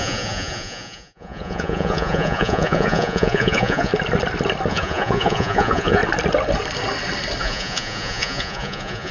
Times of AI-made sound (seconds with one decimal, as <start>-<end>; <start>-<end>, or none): 0.0-3.9; 4.7-6.0; 7.4-9.1